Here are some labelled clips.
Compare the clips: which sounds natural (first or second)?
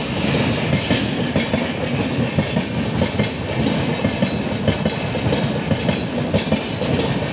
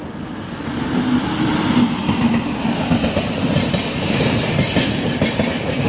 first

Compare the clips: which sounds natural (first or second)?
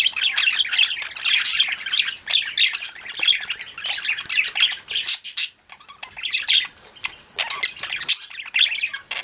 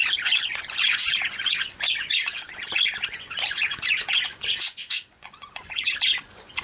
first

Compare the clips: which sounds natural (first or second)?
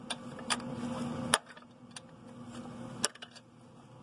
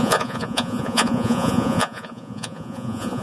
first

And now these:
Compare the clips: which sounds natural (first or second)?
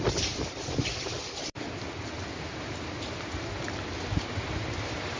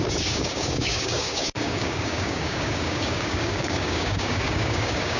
first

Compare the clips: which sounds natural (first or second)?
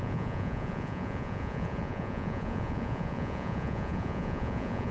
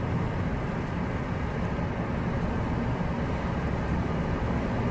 second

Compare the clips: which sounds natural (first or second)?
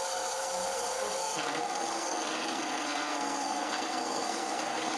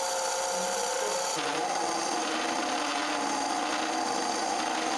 second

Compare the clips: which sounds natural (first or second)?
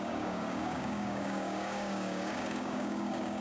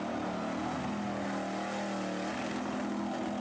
second